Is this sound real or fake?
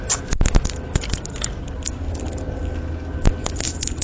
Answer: real